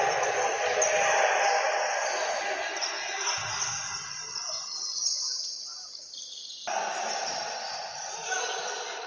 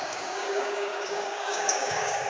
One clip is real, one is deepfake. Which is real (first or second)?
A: first